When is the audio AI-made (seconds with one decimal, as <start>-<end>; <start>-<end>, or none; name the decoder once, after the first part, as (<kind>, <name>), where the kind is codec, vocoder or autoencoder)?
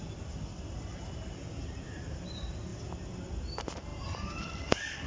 none